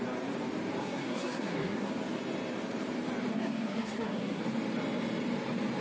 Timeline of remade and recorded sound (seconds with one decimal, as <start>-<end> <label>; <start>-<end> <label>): 0.0-0.8 recorded; 0.8-1.9 remade; 1.9-3.3 recorded; 3.3-4.4 remade; 4.4-5.8 recorded